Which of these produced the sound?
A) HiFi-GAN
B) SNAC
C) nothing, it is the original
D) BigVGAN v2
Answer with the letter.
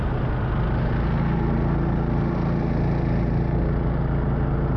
C